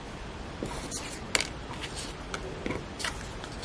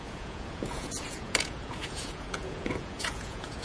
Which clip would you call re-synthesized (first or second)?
second